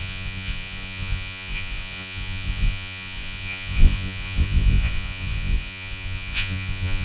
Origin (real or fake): fake